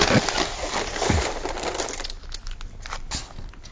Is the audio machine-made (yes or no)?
no